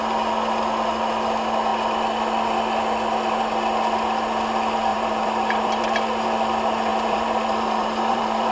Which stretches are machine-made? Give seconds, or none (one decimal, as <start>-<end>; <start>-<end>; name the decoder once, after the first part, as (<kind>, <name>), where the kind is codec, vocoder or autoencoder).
4.9-5.8 (vocoder, BigVGAN v2); 6.9-8.5